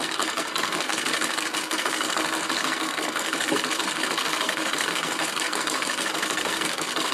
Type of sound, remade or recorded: remade